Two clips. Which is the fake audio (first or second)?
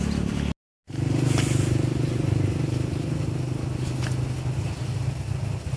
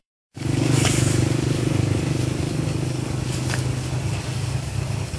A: second